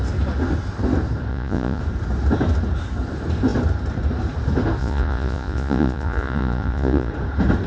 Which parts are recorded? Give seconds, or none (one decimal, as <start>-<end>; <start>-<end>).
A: 0.0-1.3; 1.8-4.8; 7.1-7.7